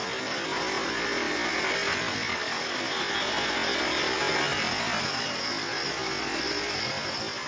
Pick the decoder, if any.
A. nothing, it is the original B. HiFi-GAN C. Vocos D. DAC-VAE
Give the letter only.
A